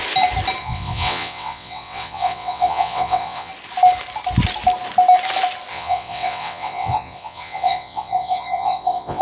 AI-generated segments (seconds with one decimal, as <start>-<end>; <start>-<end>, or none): 0.6-3.5; 5.7-9.2